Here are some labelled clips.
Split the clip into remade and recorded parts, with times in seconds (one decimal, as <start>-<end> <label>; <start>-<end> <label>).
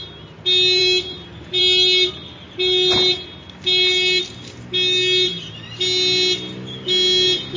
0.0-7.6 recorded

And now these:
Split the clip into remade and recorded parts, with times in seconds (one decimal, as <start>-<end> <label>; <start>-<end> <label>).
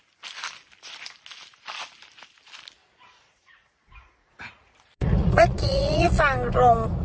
0.0-2.8 recorded; 2.8-6.2 remade; 6.2-7.0 recorded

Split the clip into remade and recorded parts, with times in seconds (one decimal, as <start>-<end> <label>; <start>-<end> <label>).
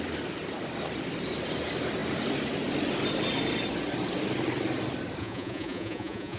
0.0-5.2 recorded; 5.2-6.4 remade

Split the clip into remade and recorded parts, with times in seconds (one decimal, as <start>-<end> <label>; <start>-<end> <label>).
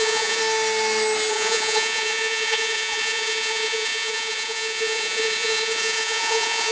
0.0-0.4 remade; 0.4-1.3 recorded; 1.3-6.7 remade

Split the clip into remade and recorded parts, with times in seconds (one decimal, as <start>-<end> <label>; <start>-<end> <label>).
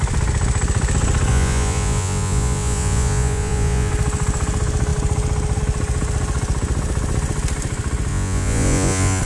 0.0-1.3 recorded; 1.3-3.9 remade; 3.9-8.1 recorded; 8.1-9.2 remade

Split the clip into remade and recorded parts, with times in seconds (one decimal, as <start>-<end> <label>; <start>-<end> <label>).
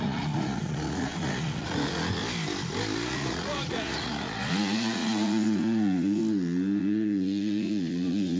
0.0-2.2 remade; 2.2-3.1 recorded; 3.1-6.2 remade; 6.2-6.8 recorded; 6.8-8.4 remade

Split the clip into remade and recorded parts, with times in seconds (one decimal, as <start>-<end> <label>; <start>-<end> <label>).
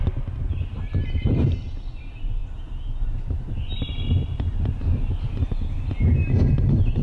0.0-7.0 recorded